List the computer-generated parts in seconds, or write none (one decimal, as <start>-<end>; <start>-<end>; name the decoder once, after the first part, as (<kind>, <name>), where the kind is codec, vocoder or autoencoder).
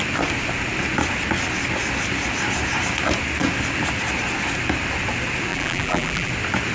5.5-6.3 (vocoder, BigVGAN v2)